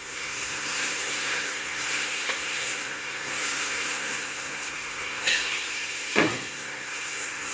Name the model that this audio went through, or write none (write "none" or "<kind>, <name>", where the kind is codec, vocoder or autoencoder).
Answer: codec, SNAC